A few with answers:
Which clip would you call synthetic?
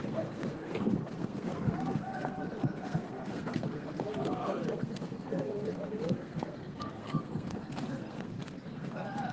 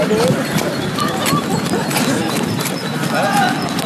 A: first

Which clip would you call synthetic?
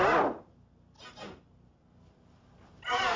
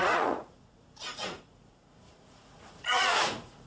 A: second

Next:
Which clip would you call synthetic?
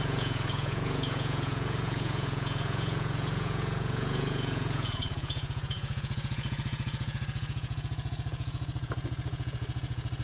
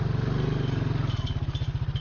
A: first